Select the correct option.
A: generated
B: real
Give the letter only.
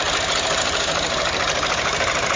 A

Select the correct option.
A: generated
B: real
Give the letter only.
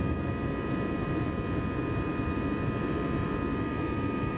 A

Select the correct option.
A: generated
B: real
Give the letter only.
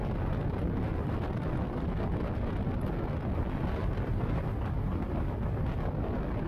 B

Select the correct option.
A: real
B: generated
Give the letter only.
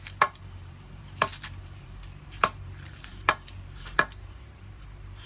B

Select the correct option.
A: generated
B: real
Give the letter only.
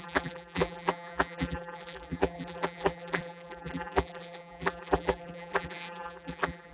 A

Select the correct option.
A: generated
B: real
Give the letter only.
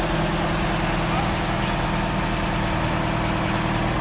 B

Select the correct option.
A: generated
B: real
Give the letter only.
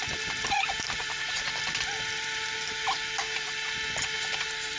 A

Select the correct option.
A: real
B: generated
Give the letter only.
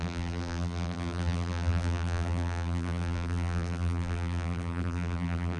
B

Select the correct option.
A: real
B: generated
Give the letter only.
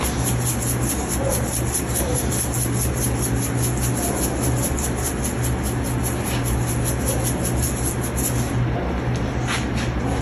A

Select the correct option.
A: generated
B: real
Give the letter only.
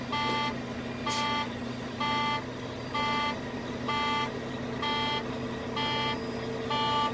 B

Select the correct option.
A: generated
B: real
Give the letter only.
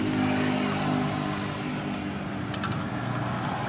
B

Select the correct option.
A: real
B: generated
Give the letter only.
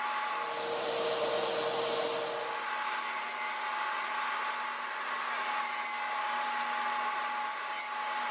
A